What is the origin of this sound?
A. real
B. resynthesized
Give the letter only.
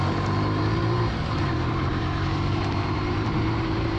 B